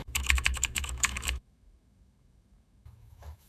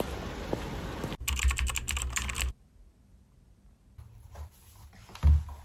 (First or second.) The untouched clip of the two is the second